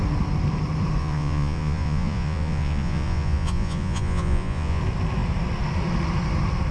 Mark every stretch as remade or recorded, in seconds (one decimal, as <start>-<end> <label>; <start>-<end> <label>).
0.0-1.0 recorded; 1.0-4.8 remade; 4.8-6.7 recorded